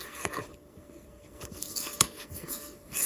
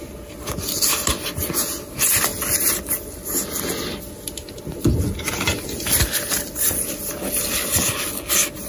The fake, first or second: first